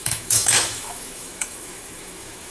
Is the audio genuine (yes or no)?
no